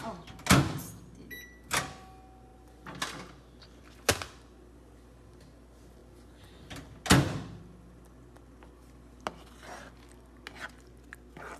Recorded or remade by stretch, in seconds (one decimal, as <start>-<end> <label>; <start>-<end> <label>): 0.0-11.6 recorded